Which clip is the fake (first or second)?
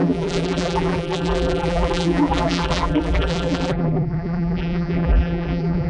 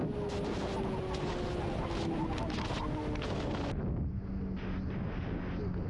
first